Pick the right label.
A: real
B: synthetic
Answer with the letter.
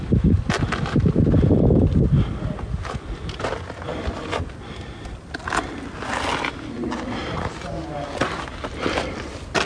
A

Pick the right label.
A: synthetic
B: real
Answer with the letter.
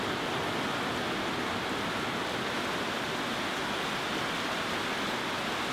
B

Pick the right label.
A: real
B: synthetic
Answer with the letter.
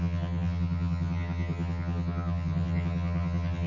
B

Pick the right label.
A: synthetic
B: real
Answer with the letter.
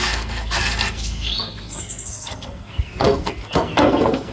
A